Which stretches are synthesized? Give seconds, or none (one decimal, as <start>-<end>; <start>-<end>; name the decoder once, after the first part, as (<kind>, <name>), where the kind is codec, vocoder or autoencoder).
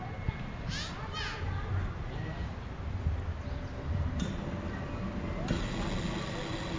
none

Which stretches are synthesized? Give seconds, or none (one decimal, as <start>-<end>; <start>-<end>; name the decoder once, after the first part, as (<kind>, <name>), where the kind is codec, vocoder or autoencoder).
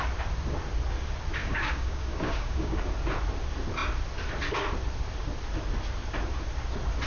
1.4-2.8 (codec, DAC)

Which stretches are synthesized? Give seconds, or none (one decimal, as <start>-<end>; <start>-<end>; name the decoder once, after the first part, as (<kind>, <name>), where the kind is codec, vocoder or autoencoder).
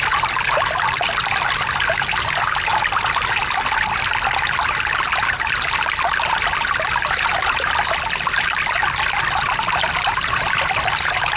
none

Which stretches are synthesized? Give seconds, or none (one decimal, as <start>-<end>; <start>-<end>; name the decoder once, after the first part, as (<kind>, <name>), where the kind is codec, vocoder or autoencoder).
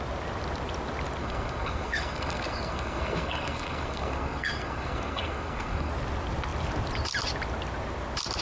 1.2-5.9 (codec, SNAC)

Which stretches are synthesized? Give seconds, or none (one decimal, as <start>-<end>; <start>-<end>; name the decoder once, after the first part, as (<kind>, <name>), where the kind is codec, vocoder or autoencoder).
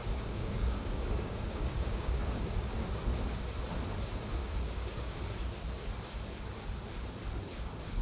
0.0-2.9 (codec, DAC); 4.4-5.2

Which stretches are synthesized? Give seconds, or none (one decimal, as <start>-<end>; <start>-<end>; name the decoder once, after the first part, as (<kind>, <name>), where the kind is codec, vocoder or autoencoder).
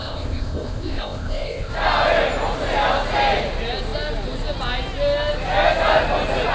0.0-1.7 (codec, ZipCodec)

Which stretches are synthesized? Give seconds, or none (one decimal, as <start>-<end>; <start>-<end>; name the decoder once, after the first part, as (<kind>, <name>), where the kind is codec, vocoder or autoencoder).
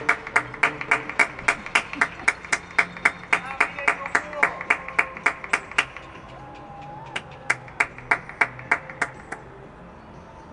none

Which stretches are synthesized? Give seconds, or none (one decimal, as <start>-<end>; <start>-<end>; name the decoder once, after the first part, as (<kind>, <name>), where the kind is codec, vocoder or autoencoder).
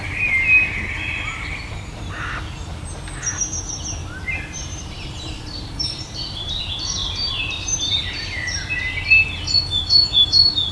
4.0-6.6 (vocoder, BigVGAN v2); 7.0-8.0